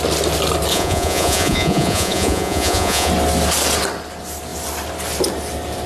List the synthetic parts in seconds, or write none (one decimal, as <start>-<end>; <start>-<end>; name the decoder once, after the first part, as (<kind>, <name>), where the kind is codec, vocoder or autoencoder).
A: 0.7-3.1 (vocoder, Vocos)